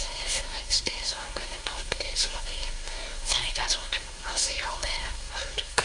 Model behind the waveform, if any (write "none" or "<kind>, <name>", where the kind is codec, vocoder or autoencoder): codec, SNAC